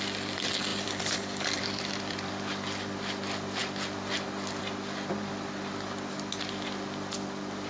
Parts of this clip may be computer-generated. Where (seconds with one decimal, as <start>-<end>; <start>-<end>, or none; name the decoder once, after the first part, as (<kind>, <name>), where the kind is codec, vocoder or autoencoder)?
0.7-2.3 (vocoder, BigVGAN v2)